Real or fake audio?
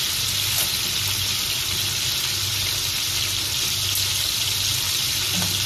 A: real